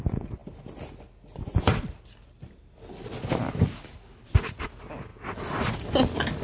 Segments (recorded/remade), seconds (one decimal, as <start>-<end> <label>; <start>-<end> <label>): 0.0-6.4 recorded